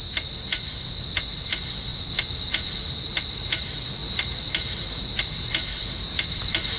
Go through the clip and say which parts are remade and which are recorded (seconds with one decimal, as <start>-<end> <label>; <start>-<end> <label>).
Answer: 0.0-6.8 recorded